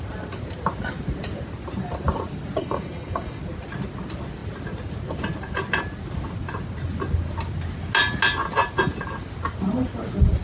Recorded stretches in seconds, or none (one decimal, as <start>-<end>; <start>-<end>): 0.0-2.6; 3.4-10.4